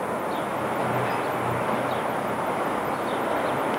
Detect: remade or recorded recorded